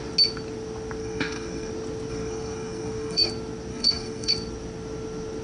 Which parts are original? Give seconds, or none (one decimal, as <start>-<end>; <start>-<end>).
0.0-1.0; 1.7-2.1; 3.3-3.7; 4.3-5.4